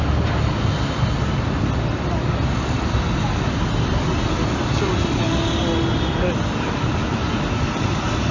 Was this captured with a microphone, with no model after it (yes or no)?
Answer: yes